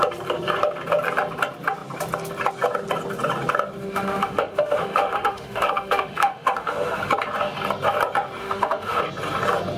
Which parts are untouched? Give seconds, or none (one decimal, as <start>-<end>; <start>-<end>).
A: 0.0-3.8; 7.1-8.4; 9.0-9.8